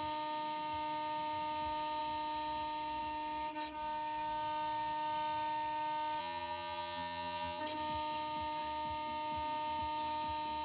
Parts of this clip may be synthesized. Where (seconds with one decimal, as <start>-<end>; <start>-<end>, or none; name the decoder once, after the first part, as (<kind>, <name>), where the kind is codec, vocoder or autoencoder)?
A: 6.2-7.6 (vocoder, HiFi-GAN)